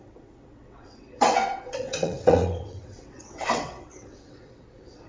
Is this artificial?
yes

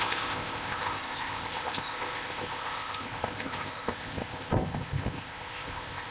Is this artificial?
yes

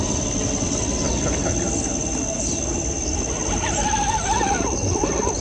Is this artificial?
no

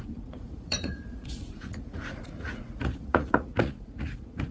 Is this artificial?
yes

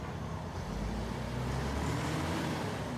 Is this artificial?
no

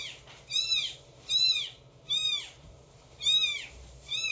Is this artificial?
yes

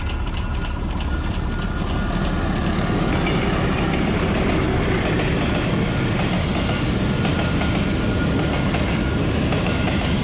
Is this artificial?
no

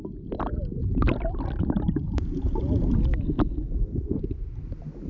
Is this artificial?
no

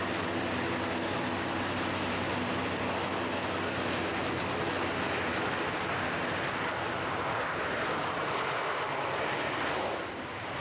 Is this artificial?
no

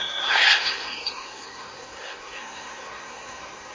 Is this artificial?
yes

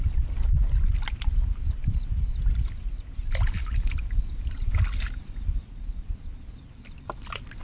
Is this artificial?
no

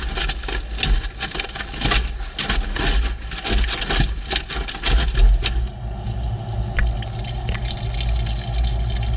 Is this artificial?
no